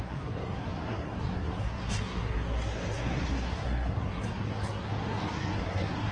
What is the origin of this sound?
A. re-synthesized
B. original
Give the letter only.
A